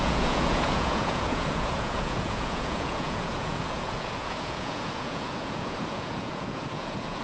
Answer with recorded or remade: remade